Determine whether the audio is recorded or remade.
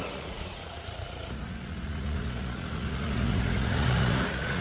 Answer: remade